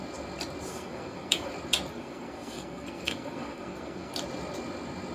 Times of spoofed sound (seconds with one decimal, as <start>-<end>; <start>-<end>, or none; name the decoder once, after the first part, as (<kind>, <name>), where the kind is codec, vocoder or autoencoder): 0.7-1.5 (codec, SNAC); 1.9-4.1